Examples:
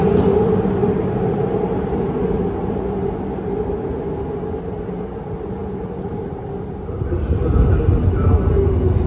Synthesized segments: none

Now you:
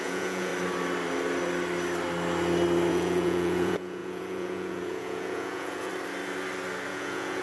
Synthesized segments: 0.0-0.5 (vocoder, Vocos); 2.9-5.9; 6.9-7.4

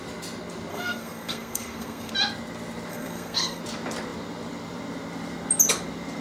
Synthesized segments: 0.7-2.1 (codec, SNAC); 2.9-3.6

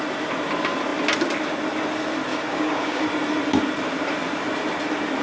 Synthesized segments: 2.3-3.0 (codec, DAC)

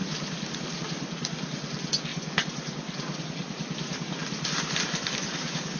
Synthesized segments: 0.0-0.8 (vocoder, BigVGAN v2); 2.1-5.8

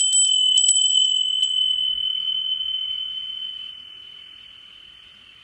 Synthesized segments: 0.5-3.7 (vocoder, Vocos)

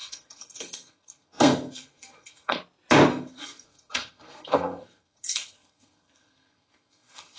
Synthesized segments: 0.0-2.6 (codec, SNAC); 3.1-7.4